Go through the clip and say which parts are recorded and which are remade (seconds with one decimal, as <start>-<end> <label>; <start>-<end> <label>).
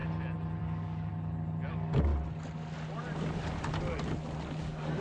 0.0-0.6 recorded; 0.6-1.1 remade; 1.1-1.7 recorded; 1.7-2.1 remade; 2.1-4.6 recorded; 4.6-5.0 remade